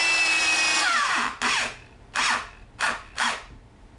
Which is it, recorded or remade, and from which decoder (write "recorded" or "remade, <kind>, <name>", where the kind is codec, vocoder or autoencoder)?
recorded